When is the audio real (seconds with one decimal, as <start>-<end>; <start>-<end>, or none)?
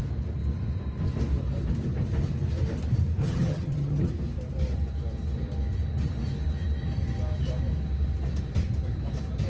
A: 0.0-3.2; 4.1-9.5